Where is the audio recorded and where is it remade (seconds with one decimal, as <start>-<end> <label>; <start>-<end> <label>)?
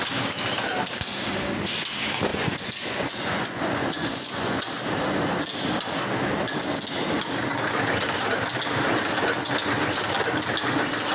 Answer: 0.0-2.3 recorded; 2.3-4.7 remade; 4.7-11.1 recorded